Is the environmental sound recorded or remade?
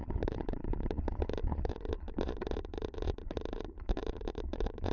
remade